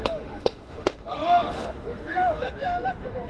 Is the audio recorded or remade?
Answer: remade